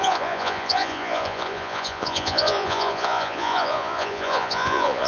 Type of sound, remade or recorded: remade